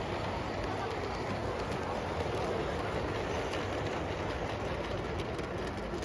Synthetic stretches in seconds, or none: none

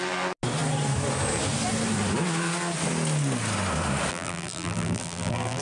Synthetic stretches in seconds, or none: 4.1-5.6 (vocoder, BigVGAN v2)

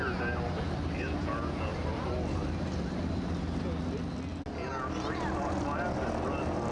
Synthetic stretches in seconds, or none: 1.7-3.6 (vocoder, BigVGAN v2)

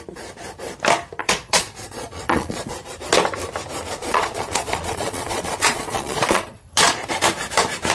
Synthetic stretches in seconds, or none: 1.2-2.7 (vocoder, Vocos); 4.0-7.1

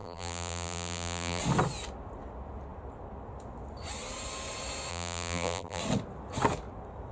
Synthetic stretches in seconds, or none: 0.0-1.4 (vocoder, BigVGAN v2); 4.9-5.8

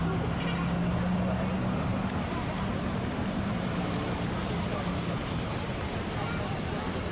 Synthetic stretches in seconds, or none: 1.9-6.1 (vocoder, BigVGAN v2)

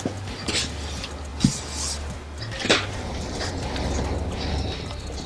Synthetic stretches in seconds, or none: none